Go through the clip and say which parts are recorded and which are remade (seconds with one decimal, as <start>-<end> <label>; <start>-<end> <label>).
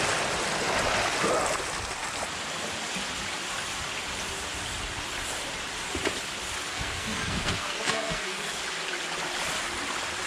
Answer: 0.0-6.7 recorded; 6.7-8.6 remade; 8.6-10.3 recorded